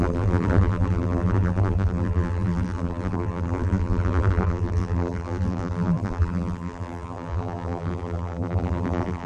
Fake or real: fake